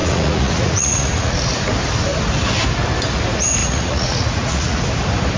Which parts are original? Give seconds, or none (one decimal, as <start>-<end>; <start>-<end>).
1.5-3.6; 4.8-5.4